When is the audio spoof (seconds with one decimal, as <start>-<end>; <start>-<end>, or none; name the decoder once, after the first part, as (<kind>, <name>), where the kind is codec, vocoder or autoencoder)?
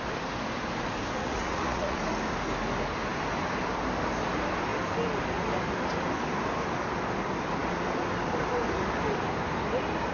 1.2-2.0 (vocoder, Vocos)